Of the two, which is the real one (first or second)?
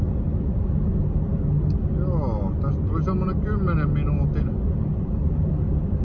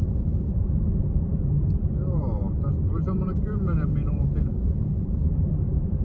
first